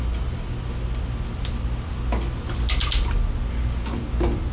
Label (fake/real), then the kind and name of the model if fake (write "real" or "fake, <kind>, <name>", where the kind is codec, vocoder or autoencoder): real